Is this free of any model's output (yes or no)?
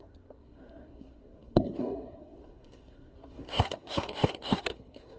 no